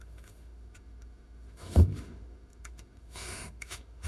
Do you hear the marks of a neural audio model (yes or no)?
yes